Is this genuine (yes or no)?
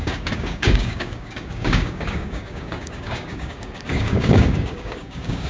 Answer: no